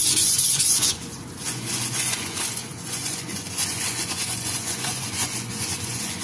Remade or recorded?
remade